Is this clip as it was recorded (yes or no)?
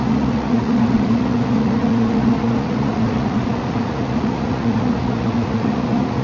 no